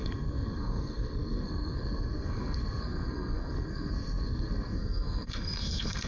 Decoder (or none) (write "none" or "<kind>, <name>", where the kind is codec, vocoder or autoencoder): codec, SNAC